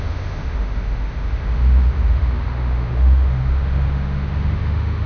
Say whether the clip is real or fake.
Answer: fake